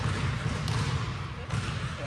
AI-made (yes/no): no